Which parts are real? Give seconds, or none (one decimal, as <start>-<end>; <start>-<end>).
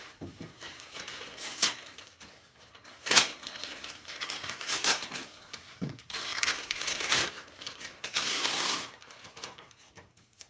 none